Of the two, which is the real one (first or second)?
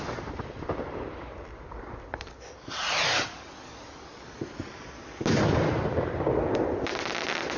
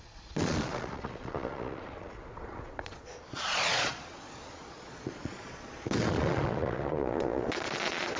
first